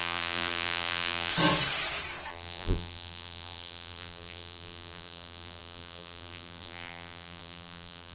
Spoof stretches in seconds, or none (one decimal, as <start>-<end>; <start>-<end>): 0.0-1.3; 2.3-8.1